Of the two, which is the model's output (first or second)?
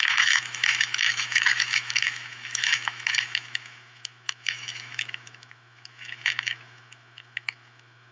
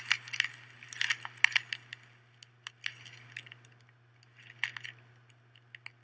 first